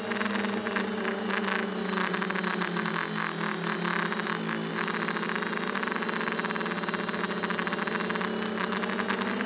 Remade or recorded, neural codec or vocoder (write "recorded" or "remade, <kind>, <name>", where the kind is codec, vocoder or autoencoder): recorded